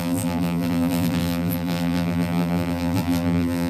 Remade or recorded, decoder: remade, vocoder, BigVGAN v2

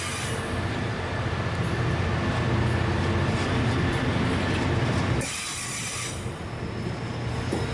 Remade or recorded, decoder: recorded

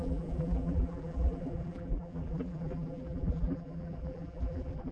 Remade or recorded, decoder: remade, vocoder, BigVGAN v2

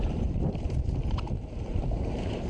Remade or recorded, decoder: remade, vocoder, BigVGAN v2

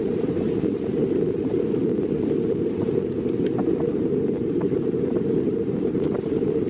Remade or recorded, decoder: remade, vocoder, BigVGAN v2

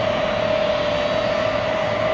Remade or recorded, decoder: recorded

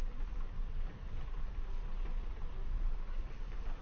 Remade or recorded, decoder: remade, vocoder, BigVGAN v2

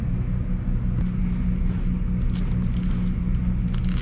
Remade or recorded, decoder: recorded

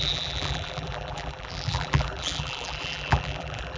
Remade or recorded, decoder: remade, vocoder, BigVGAN v2